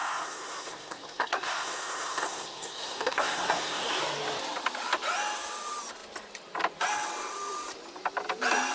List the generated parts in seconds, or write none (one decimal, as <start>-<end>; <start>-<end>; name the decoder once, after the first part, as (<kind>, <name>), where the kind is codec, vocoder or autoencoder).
0.0-4.0 (codec, SNAC)